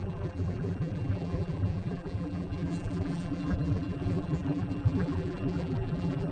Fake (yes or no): yes